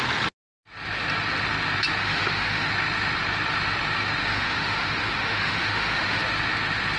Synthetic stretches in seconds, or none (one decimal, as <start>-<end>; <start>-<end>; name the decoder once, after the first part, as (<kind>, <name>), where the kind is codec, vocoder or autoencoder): 2.0-2.7 (autoencoder, DAC-VAE); 4.2-6.2